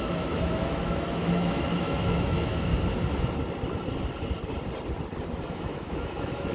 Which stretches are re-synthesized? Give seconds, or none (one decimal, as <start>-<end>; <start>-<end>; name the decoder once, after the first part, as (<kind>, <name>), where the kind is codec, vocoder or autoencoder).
0.0-2.7 (autoencoder, DAC-VAE); 5.5-6.5